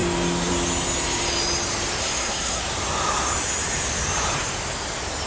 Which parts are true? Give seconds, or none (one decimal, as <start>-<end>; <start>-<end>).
0.0-2.0; 2.6-5.3